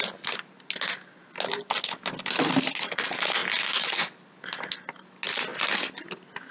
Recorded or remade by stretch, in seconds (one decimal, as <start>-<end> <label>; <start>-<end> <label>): 0.0-6.5 recorded

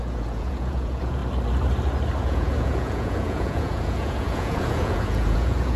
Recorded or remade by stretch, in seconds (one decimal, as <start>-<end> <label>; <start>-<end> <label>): 0.0-1.2 remade; 1.2-2.2 recorded; 2.2-5.8 remade